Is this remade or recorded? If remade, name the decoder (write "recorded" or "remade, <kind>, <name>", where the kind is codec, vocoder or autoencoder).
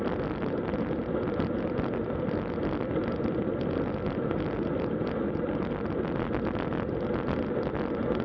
recorded